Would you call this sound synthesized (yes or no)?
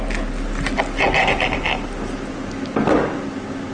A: no